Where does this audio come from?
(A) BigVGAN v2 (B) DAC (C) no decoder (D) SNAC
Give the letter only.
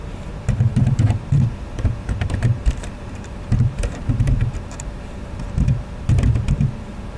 A